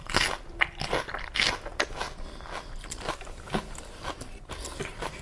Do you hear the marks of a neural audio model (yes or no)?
no